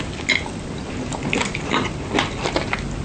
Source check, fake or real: real